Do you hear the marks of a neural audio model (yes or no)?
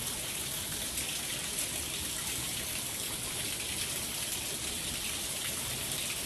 no